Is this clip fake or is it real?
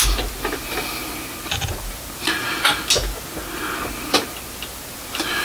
real